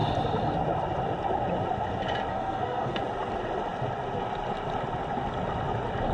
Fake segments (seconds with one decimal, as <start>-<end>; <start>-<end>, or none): 2.3-3.0